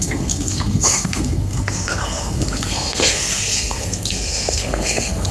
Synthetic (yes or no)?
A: yes